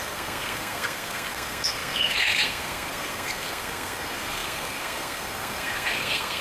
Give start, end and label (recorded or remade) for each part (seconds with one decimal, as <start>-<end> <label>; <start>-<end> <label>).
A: 0.0-6.4 remade